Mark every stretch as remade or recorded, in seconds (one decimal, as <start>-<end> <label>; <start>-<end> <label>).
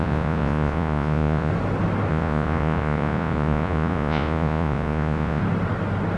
0.0-1.5 remade; 1.5-2.1 recorded; 2.1-5.4 remade; 5.4-6.2 recorded